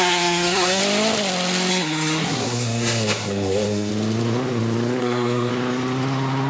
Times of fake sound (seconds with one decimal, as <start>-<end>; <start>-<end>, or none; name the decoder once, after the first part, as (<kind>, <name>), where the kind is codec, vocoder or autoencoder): 0.0-0.8 (codec, SNAC); 1.7-3.9; 5.0-5.5